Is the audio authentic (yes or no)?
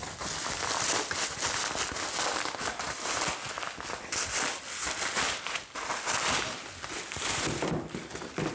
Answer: yes